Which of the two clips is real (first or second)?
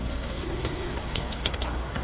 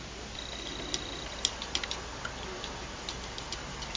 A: second